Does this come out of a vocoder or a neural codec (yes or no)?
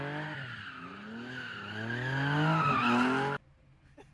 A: no